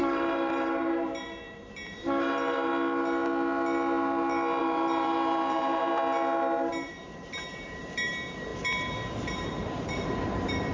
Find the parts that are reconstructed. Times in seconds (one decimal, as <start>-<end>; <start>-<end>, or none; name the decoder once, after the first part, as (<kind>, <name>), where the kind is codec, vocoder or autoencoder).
0.0-2.7 (vocoder, BigVGAN v2); 4.6-5.9; 6.7-10.7